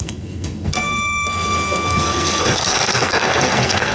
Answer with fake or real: fake